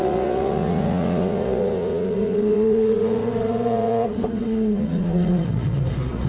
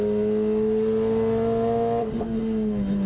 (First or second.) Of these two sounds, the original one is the second